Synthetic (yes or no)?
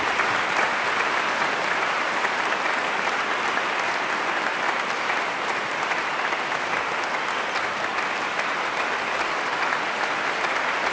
no